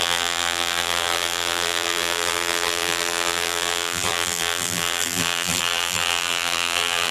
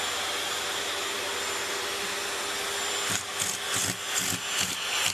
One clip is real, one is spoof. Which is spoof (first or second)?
first